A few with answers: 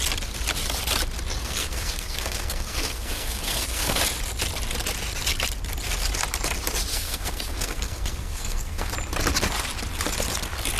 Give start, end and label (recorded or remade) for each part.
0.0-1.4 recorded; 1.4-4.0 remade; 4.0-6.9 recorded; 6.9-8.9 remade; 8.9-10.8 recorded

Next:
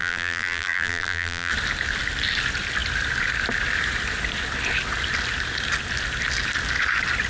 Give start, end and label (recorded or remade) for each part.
0.0-1.5 remade; 1.5-7.3 recorded

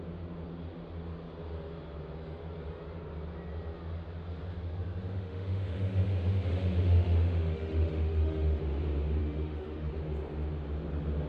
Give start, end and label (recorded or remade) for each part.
0.0-5.1 recorded; 5.1-8.6 remade; 8.6-9.2 recorded; 9.2-9.9 remade; 9.9-11.3 recorded

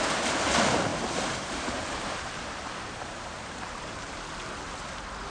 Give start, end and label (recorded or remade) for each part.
0.0-0.9 recorded; 0.9-4.1 remade; 4.1-5.3 recorded

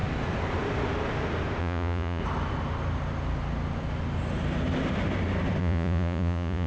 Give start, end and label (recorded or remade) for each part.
0.0-1.6 recorded; 1.6-2.2 remade; 2.2-5.6 recorded; 5.6-6.7 remade

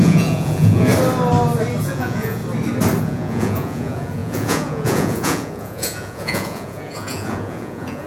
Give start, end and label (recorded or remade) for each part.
0.0-0.9 remade; 0.9-1.8 recorded; 1.8-2.4 remade; 2.4-3.0 recorded; 3.0-8.1 remade